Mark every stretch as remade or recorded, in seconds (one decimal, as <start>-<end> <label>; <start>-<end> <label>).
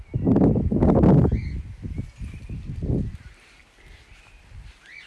0.0-5.1 recorded